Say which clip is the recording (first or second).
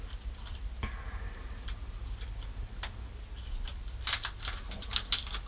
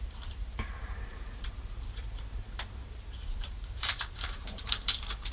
first